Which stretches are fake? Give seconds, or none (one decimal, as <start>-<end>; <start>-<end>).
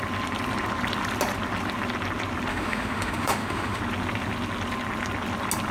2.5-3.8